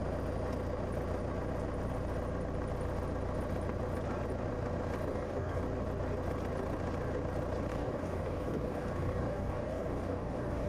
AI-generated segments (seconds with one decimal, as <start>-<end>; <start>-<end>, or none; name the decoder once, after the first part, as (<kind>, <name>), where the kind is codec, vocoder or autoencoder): 5.1-5.6 (codec, DAC); 7.7-10.7